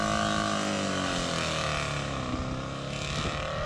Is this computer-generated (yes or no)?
no